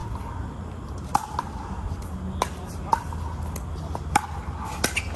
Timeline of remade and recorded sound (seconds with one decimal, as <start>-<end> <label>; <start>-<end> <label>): 0.0-5.2 recorded